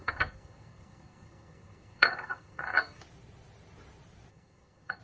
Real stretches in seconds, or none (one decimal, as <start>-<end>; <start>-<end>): 3.0-4.3